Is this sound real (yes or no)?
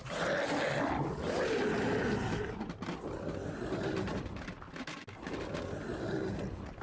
yes